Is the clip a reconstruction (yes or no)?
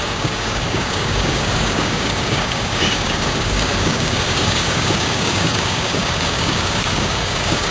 yes